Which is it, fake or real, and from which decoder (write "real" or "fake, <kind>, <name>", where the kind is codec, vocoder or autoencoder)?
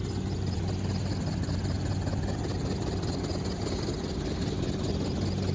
real